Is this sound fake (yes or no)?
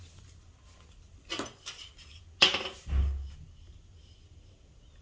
no